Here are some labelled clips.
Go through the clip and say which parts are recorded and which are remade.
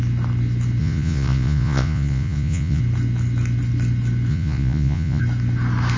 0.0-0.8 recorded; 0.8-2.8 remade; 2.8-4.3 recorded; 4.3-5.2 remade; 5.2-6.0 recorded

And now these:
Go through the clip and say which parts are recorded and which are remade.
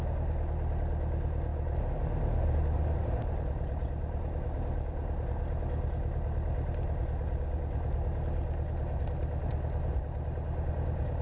0.0-11.2 recorded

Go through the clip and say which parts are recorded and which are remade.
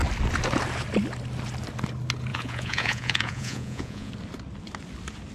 0.0-2.3 recorded; 2.3-4.1 remade; 4.1-5.3 recorded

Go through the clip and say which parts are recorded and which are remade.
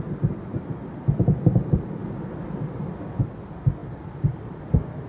0.0-5.1 recorded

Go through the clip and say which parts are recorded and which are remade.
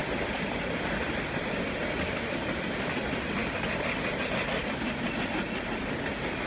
0.0-6.5 recorded